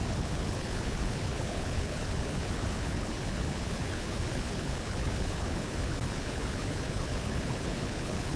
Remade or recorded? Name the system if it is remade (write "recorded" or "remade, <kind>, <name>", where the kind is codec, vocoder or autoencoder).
remade, codec, HILCodec